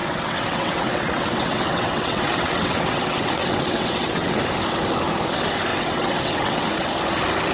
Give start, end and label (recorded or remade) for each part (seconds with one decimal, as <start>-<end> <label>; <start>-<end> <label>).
0.0-4.4 remade; 4.4-5.7 recorded; 5.7-6.7 remade; 6.7-7.5 recorded